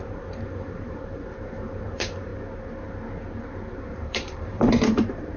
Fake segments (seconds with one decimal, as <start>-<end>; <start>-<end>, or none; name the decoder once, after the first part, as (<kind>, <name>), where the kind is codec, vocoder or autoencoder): 0.0-2.3 (vocoder, BigVGAN v2); 3.9-5.4